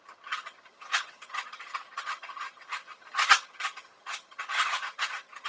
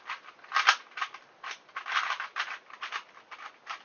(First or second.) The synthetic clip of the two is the first